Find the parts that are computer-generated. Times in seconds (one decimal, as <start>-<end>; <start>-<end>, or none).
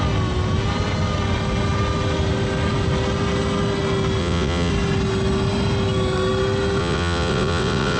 4.2-4.7; 6.8-8.0